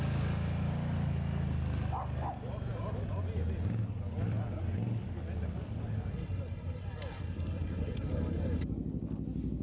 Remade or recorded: recorded